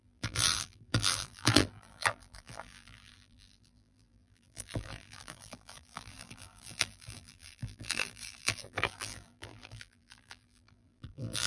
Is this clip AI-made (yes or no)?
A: yes